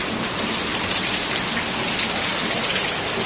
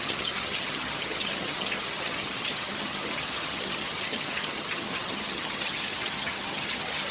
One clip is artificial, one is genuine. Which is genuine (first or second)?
first